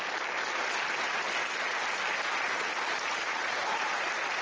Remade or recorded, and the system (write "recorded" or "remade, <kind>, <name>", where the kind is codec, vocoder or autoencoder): recorded